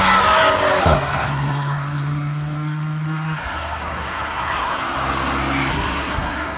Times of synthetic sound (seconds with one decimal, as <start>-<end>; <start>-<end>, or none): 0.8-4.8; 5.7-6.6